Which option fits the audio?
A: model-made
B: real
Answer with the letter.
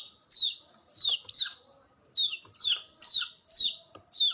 A